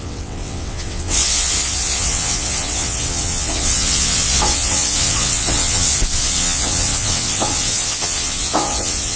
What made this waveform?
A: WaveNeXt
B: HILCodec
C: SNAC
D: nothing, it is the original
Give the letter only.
A